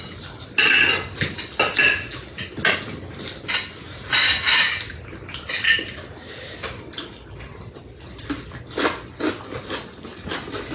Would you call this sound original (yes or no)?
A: yes